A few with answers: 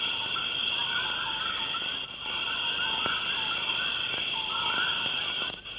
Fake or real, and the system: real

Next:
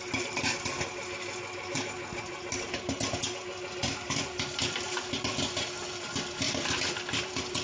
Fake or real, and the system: real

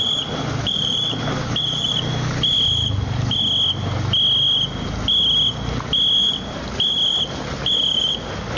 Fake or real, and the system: real